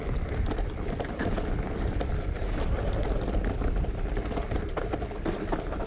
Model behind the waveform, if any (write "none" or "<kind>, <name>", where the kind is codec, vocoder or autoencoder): none